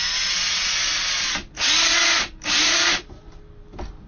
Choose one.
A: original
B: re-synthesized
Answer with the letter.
A